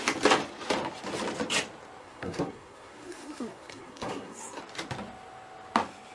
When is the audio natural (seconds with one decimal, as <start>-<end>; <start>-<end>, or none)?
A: 0.0-2.0; 4.6-6.1

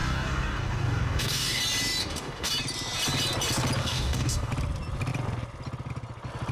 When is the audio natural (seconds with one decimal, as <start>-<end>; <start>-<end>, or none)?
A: 1.6-2.0; 2.5-3.8; 4.5-6.5

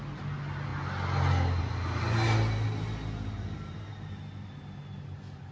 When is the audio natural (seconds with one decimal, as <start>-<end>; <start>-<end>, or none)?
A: 0.0-5.5

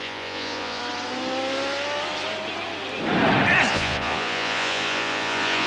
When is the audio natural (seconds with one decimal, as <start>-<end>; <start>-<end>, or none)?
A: 0.8-3.7

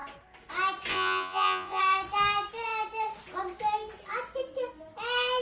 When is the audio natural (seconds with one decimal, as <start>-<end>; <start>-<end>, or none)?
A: 0.0-0.9; 1.8-5.4